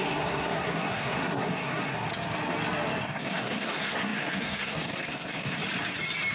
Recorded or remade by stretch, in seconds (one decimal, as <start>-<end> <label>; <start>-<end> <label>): 0.0-2.1 remade; 2.1-3.0 recorded; 3.0-5.6 remade; 5.6-6.3 recorded

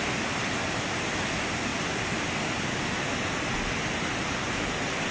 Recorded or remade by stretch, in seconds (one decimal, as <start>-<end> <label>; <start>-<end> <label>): 0.0-5.1 recorded